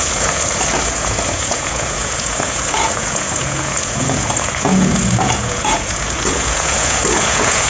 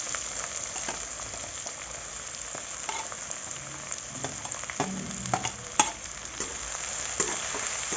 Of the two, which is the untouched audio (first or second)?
second